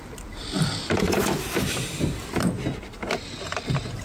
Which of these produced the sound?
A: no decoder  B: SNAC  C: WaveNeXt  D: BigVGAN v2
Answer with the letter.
A